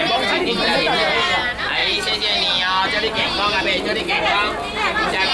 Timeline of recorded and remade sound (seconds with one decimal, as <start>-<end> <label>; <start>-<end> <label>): 0.0-5.3 recorded